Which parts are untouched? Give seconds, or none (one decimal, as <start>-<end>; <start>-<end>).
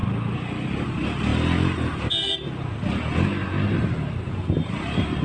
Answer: 0.0-5.2